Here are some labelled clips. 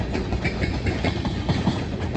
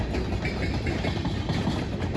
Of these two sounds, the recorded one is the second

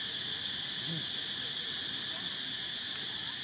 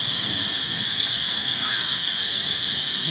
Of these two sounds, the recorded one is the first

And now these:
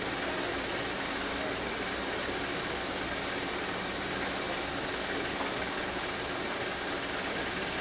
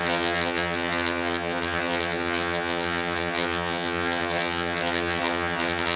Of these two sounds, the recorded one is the first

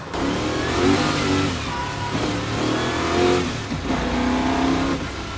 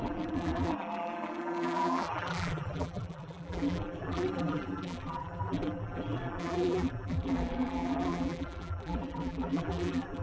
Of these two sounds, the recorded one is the first